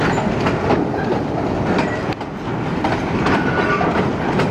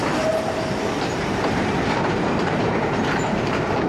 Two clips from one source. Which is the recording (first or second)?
first